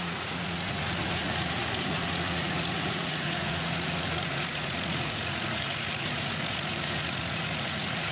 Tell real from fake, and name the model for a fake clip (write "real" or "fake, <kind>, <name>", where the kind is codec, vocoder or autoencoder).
fake, vocoder, Vocos